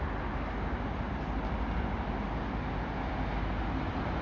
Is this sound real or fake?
real